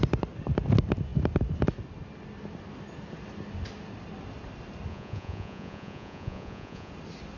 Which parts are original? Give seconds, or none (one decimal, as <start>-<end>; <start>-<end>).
0.0-4.9; 6.9-7.4